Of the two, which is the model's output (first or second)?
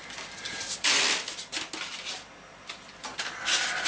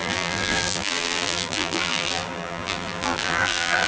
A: second